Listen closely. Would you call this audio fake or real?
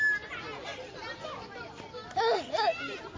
real